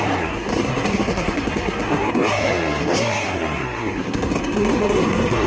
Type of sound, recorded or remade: remade